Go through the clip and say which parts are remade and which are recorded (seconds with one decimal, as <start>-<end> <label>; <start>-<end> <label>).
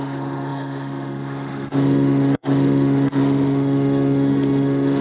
0.0-5.0 remade